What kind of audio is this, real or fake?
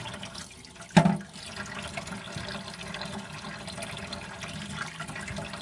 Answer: real